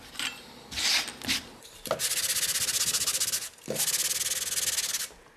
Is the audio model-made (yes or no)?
no